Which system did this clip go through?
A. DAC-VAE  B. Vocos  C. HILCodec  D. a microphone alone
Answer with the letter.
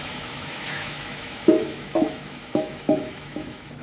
A